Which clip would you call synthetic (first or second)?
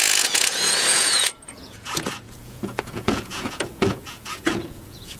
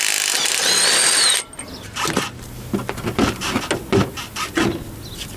first